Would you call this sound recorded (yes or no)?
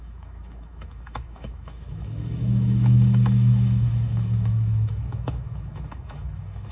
no